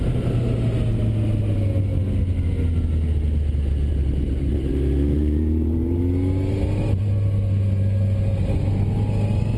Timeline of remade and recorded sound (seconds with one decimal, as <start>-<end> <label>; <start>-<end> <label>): 0.0-4.7 recorded; 4.7-6.0 remade; 6.0-9.6 recorded